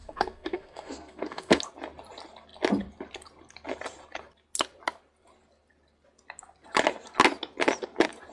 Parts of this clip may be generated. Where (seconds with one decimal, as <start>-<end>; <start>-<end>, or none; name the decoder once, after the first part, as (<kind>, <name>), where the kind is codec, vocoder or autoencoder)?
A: 0.0-1.6 (codec, SNAC)